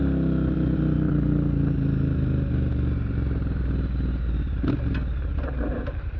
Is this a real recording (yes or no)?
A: yes